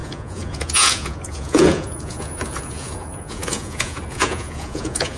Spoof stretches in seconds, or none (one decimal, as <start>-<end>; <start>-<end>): 0.0-5.2